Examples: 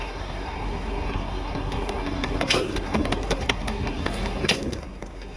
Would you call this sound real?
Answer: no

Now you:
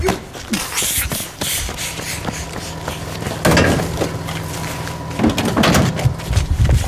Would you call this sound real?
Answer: yes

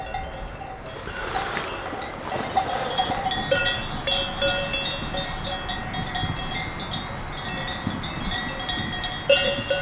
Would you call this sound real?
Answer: yes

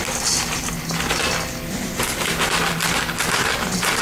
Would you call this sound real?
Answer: yes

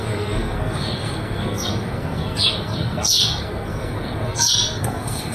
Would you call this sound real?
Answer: no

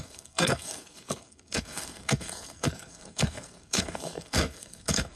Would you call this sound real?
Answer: no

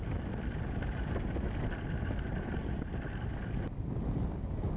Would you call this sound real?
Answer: yes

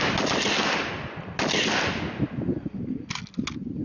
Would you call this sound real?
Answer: yes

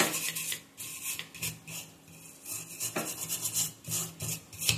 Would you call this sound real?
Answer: yes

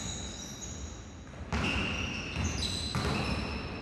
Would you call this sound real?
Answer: yes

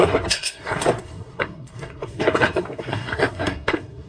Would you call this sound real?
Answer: no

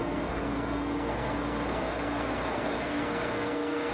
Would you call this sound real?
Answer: no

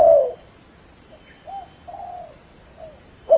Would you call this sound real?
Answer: yes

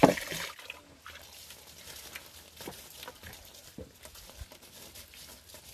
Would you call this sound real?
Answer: yes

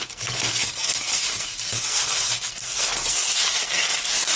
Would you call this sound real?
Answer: no